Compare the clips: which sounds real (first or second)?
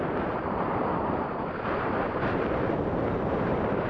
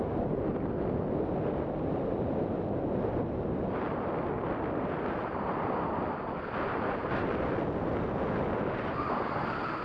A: second